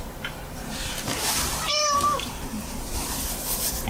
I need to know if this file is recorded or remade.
remade